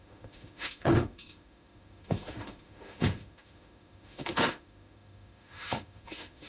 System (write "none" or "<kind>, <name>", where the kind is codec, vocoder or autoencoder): autoencoder, DAC-VAE